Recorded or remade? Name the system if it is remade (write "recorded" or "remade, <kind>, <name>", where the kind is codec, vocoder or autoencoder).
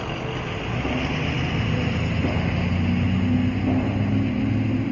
recorded